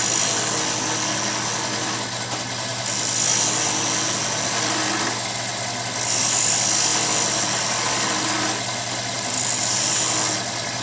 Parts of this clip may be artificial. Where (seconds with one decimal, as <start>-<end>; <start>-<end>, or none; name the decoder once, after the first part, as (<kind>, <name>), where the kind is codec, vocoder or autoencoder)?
none